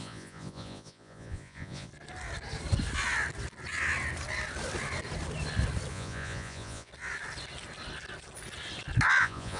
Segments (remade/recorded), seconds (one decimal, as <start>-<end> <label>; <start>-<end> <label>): 0.0-1.9 remade; 1.9-5.9 recorded; 5.9-6.9 remade; 6.9-9.2 recorded; 9.2-9.6 remade